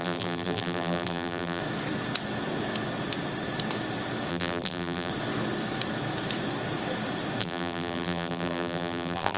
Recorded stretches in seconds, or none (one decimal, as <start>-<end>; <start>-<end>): 1.6-4.3; 5.1-7.4